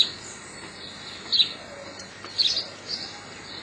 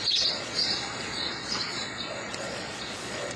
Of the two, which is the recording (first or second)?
first